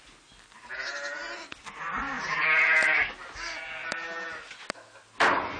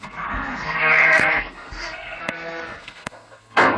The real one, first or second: first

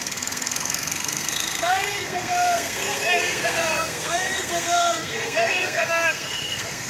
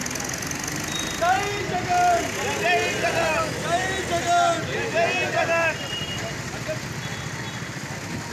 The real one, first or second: second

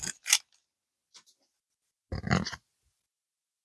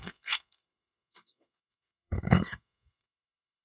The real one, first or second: first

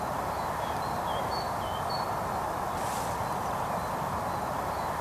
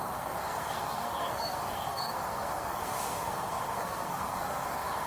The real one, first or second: first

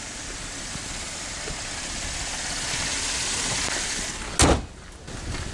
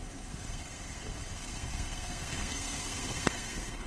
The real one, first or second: first